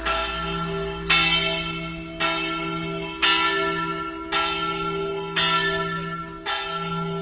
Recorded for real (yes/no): yes